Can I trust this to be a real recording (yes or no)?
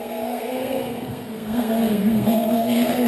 no